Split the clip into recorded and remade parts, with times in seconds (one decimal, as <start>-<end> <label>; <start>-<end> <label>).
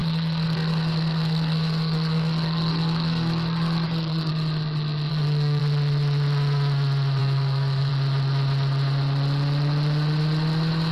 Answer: 0.0-4.3 remade; 4.3-5.1 recorded; 5.1-5.6 remade; 5.6-7.2 recorded; 7.2-7.9 remade; 7.9-10.9 recorded